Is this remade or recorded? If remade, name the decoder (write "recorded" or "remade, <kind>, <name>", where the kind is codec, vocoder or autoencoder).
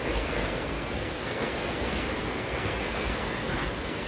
remade, codec, SNAC